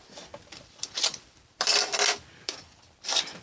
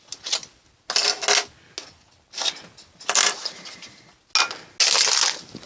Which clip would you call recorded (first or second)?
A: second